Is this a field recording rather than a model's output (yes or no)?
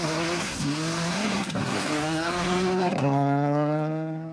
no